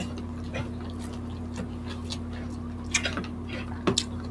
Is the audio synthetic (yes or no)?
no